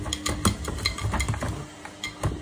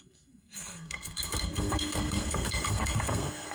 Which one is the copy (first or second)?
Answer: second